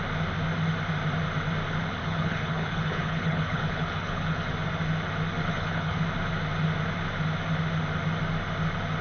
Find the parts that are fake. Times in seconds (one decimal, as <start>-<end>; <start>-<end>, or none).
2.0-4.5; 5.4-6.0